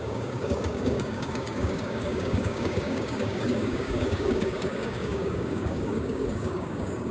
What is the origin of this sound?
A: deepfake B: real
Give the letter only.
A